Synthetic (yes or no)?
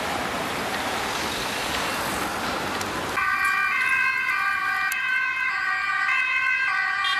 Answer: no